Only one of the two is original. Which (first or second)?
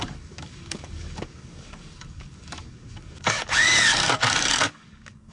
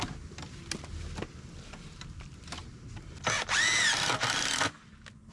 second